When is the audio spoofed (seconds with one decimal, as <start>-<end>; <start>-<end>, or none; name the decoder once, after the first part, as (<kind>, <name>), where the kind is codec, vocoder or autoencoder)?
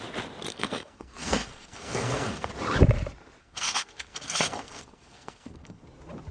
0.5-2.5 (codec, SNAC); 3.4-5.8